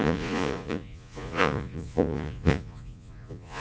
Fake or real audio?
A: fake